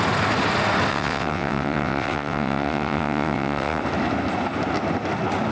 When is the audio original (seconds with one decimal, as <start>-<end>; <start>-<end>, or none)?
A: 0.0-0.9; 3.8-5.5